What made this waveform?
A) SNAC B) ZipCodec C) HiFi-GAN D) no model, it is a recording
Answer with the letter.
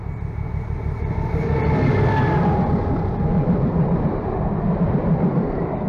D